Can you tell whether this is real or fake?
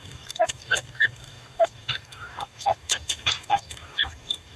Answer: fake